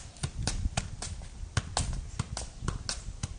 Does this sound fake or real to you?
real